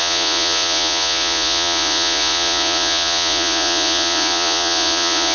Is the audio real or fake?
fake